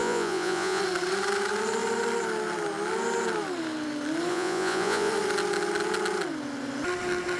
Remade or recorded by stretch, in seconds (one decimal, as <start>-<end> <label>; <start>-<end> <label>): 0.0-0.8 remade; 0.8-4.3 recorded; 4.3-5.1 remade; 5.1-7.4 recorded

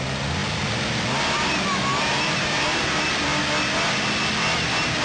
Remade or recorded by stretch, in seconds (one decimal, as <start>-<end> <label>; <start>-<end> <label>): 0.0-0.4 recorded; 0.4-3.4 remade; 3.4-5.0 recorded

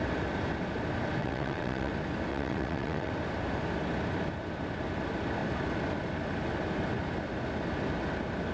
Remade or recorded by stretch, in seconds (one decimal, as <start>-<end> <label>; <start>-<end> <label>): 0.0-1.2 recorded; 1.2-1.9 remade; 1.9-2.3 recorded; 2.3-3.1 remade; 3.1-8.5 recorded

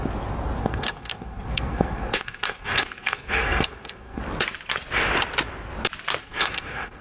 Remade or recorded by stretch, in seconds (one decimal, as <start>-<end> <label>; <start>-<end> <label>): 0.0-0.6 recorded; 0.6-4.2 remade; 4.2-6.2 recorded; 6.2-7.0 remade

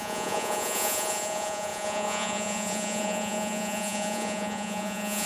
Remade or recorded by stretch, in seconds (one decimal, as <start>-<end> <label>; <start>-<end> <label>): 0.0-5.3 remade

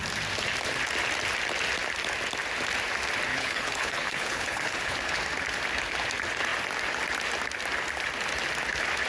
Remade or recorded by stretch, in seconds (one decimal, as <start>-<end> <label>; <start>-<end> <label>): 0.0-3.3 recorded; 3.3-5.2 remade; 5.2-9.1 recorded

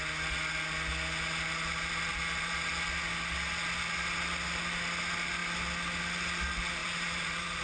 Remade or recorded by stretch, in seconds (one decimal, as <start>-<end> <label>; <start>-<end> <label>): 0.0-2.1 recorded; 2.1-2.7 remade; 2.7-6.8 recorded; 6.8-7.6 remade